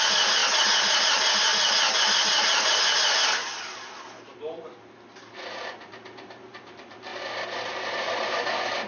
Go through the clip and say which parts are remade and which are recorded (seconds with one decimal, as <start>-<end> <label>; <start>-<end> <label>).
0.0-0.4 remade; 0.4-1.0 recorded; 1.0-1.5 remade; 1.5-5.6 recorded; 5.6-7.1 remade; 7.1-8.0 recorded; 8.0-8.9 remade